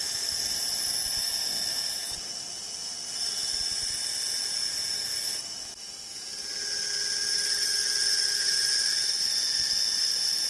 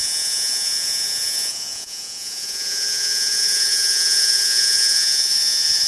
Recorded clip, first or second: first